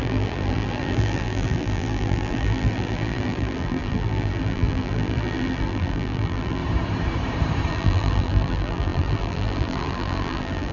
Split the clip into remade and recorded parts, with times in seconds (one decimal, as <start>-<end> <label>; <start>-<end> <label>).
0.0-6.6 remade; 6.6-7.7 recorded; 7.7-10.7 remade